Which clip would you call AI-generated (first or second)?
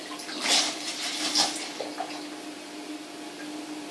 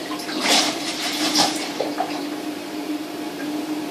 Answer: second